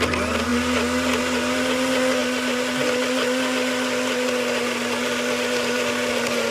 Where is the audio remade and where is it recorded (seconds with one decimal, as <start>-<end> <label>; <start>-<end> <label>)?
0.0-6.5 recorded